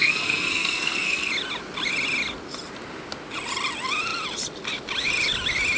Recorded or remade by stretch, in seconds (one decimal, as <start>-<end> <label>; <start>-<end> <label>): 0.0-1.3 remade; 1.3-5.8 recorded